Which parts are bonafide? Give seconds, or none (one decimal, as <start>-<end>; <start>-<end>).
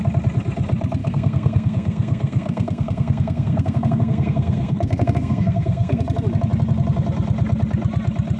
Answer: 0.0-1.0; 6.0-8.4